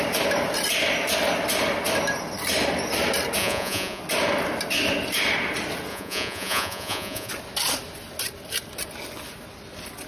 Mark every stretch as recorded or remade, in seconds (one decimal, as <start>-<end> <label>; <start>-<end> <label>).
0.0-3.4 recorded; 3.4-4.0 remade; 4.0-5.9 recorded; 5.9-7.3 remade; 7.3-10.1 recorded